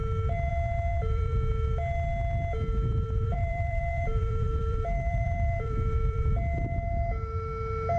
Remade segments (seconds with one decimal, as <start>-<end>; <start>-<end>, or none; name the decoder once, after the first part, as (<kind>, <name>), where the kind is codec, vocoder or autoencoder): 0.9-1.5 (vocoder, BigVGAN v2); 2.9-6.3